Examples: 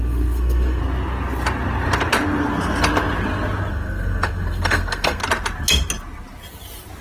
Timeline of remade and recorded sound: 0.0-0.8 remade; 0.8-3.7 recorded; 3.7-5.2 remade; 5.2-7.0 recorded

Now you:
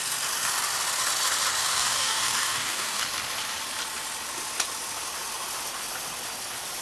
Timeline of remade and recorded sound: 0.0-1.6 recorded; 1.6-3.0 remade; 3.0-6.8 recorded

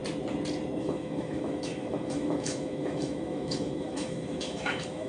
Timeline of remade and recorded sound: 0.0-0.8 recorded; 0.8-5.1 remade

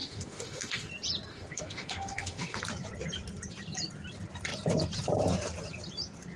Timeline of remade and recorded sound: 0.0-0.9 remade; 0.9-1.3 recorded; 1.3-2.6 remade; 2.6-6.4 recorded

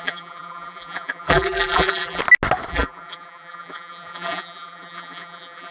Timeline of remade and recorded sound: 0.0-2.2 remade; 2.2-2.7 recorded; 2.7-5.7 remade